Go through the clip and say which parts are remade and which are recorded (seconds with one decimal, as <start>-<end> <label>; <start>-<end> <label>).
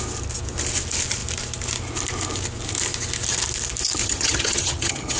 0.0-4.0 recorded; 4.0-5.2 remade